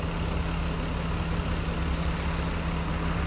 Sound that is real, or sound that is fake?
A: real